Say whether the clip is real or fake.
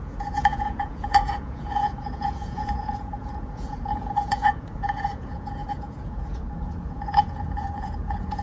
fake